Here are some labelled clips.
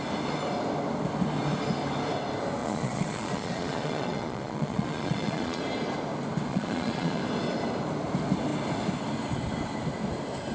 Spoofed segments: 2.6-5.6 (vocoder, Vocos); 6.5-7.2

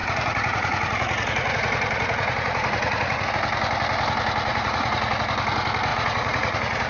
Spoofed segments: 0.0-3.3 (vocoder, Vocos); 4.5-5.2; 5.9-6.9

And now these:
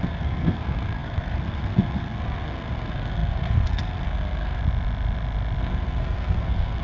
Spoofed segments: 0.0-4.6 (codec, SNAC); 5.6-6.8

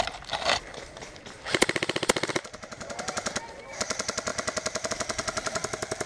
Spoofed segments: 0.7-2.3 (vocoder, BigVGAN v2)

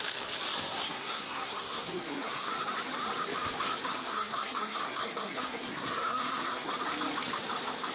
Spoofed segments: 0.5-2.5 (codec, SNAC); 3.9-6.7